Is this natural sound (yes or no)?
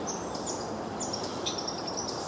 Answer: yes